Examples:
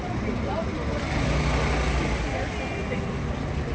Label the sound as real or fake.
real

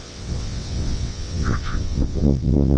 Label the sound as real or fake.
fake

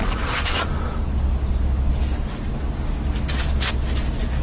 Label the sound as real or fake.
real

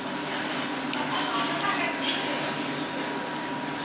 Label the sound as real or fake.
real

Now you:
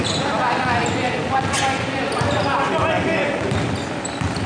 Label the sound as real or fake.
real